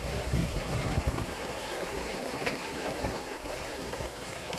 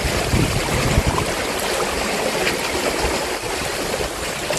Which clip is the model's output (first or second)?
first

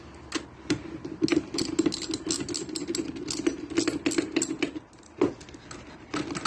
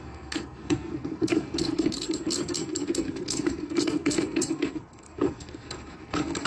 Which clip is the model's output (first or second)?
second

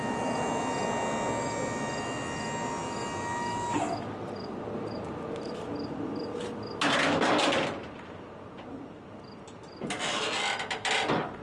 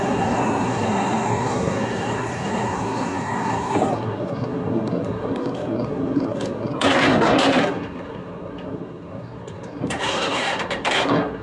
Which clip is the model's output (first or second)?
second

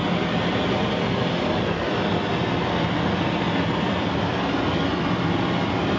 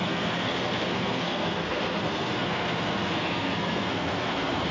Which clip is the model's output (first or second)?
second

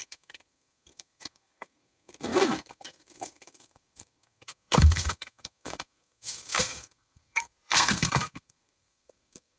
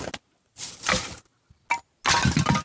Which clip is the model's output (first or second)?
first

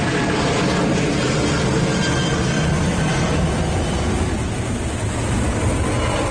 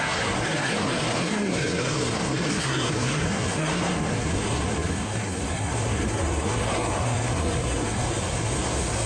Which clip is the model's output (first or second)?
second